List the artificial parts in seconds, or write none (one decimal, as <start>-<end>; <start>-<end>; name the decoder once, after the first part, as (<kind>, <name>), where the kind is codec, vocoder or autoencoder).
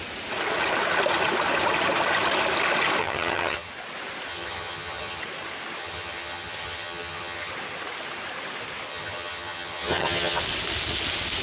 3.0-3.7 (vocoder, HiFi-GAN); 4.3-5.2; 5.8-7.5; 8.9-10.4